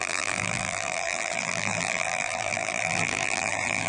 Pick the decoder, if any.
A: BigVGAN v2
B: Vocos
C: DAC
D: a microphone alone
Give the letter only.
A